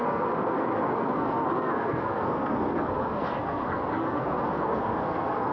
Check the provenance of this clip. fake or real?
fake